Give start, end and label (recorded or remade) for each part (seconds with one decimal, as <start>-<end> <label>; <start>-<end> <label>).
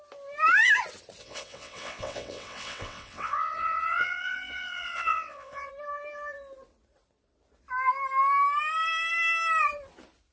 0.0-1.2 recorded; 1.2-5.7 remade; 5.7-10.3 recorded